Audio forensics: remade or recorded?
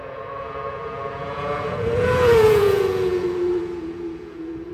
remade